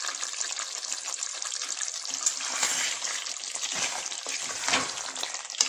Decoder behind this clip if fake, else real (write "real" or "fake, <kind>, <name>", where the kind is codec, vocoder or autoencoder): real